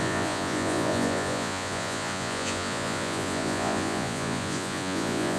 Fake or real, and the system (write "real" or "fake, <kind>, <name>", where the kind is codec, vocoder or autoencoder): fake, vocoder, Vocos